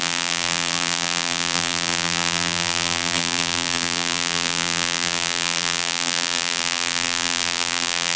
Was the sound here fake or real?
fake